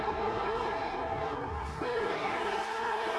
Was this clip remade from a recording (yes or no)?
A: yes